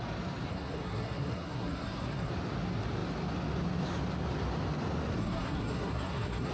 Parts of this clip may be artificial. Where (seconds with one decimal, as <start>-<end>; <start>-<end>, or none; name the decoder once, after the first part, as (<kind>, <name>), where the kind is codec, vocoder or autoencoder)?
0.5-2.3 (codec, SNAC); 5.2-6.5